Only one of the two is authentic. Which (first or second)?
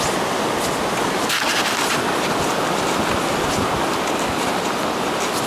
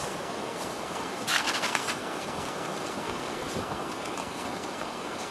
first